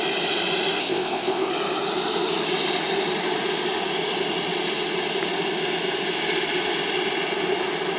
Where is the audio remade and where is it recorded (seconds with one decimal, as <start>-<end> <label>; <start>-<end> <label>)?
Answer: 0.0-0.8 recorded; 0.8-1.5 remade; 1.5-8.0 recorded